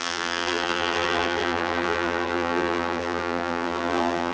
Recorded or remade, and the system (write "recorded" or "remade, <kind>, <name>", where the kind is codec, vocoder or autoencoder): remade, vocoder, BigVGAN v2